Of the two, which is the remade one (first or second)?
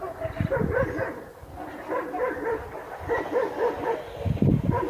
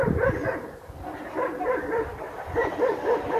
second